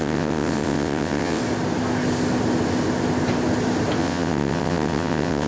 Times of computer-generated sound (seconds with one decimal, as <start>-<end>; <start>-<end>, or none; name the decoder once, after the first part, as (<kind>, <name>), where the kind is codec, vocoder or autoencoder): 0.0-1.4 (vocoder, WaveNeXt); 4.0-5.5

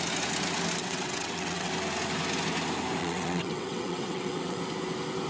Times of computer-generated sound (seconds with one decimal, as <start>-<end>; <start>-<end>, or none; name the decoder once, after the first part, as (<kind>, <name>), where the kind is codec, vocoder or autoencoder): 0.8-1.7 (vocoder, WaveNeXt); 3.0-4.6

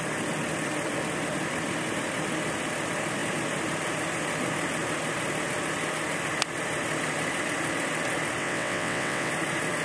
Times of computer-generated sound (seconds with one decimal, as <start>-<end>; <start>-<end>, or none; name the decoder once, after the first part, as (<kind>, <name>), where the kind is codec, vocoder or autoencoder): 8.4-9.3 (vocoder, WaveNeXt)

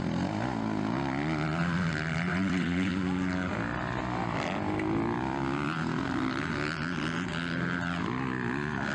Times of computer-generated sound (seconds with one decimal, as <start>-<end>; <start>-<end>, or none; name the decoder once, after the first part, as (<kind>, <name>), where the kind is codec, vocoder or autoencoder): 2.3-2.9 (vocoder, WaveNeXt)

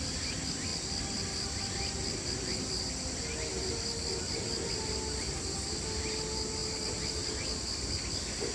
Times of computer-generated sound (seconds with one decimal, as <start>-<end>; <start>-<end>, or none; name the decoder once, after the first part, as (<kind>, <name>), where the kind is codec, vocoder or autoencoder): none

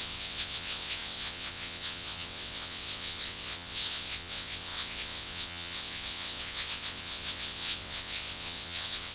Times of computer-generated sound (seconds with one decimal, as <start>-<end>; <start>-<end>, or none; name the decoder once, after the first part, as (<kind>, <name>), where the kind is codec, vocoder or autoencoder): 0.0-9.1 (vocoder, WaveNeXt)